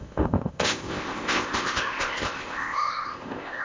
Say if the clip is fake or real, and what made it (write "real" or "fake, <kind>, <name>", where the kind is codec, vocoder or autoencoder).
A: fake, codec, ZipCodec